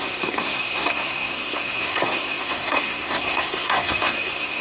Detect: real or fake fake